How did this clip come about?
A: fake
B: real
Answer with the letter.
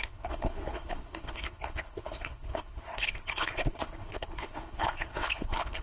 A